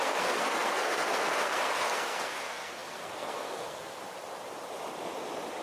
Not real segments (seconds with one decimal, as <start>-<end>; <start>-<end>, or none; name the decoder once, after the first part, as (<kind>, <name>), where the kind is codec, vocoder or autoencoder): 0.0-3.9 (codec, SNAC)